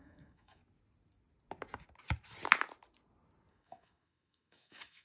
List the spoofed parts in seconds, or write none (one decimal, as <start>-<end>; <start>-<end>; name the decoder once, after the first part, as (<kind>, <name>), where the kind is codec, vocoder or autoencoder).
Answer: 0.0-0.6 (autoencoder, DAC-VAE); 3.5-5.0